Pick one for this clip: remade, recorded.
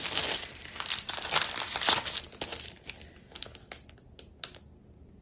recorded